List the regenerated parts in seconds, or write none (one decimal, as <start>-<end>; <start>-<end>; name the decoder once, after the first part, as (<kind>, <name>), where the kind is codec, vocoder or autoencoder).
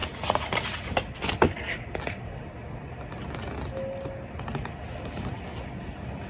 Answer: none